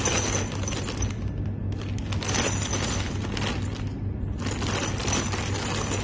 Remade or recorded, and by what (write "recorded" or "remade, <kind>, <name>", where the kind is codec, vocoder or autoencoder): recorded